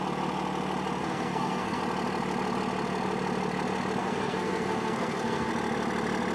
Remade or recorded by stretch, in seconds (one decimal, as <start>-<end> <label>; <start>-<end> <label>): 0.0-1.0 recorded; 1.0-1.8 remade; 1.8-4.0 recorded; 4.0-5.5 remade; 5.5-6.3 recorded